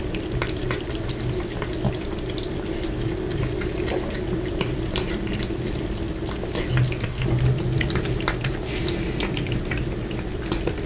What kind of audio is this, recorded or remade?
recorded